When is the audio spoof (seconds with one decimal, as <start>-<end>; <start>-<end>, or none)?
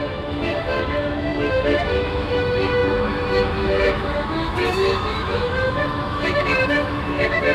0.0-7.5